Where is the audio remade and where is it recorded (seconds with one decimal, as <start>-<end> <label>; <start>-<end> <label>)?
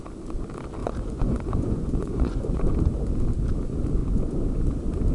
0.0-0.8 recorded; 0.8-2.6 remade; 2.6-4.0 recorded; 4.0-4.6 remade; 4.6-5.1 recorded